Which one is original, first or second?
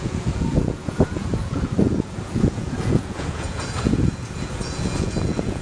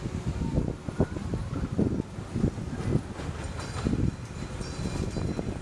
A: second